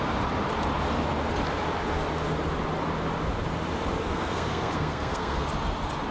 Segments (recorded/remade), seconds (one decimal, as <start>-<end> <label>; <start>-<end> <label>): 0.0-4.1 recorded; 4.1-5.4 remade; 5.4-6.1 recorded